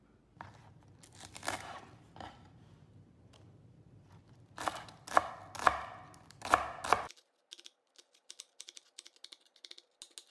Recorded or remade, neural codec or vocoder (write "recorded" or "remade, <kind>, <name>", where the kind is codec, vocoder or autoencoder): recorded